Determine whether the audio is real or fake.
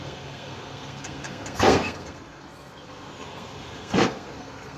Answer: fake